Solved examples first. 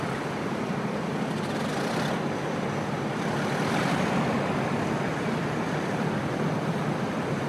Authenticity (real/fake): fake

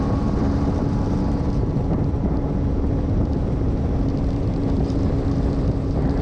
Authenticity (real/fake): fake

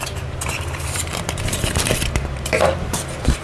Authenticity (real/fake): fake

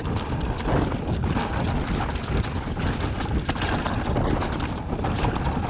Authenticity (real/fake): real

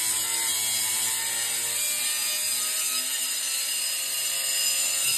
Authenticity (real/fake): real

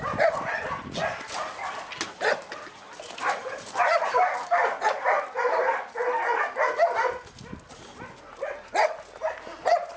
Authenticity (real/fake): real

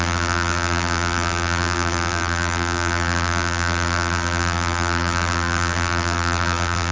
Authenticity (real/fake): fake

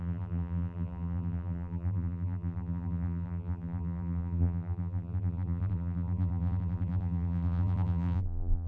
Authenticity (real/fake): fake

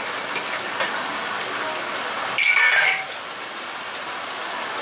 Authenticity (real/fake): real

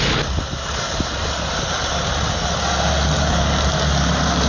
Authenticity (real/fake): real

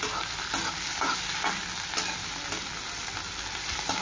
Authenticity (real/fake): real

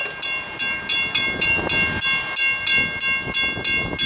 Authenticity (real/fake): real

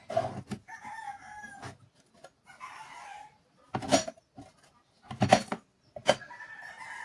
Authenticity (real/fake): real